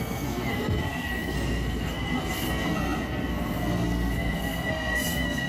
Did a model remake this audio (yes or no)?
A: yes